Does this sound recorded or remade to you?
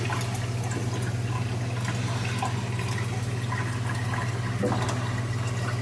recorded